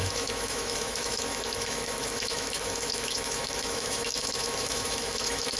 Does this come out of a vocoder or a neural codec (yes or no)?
yes